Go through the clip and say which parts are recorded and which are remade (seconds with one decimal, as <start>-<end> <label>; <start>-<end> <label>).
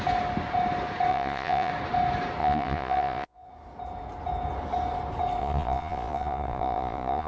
0.0-1.1 recorded; 1.1-1.7 remade; 1.7-2.4 recorded; 2.4-3.5 remade; 3.5-5.4 recorded; 5.4-7.3 remade